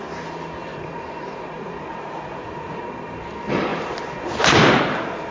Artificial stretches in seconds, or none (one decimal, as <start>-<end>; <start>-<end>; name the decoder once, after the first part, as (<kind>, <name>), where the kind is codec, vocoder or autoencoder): 0.7-2.8 (vocoder, Vocos)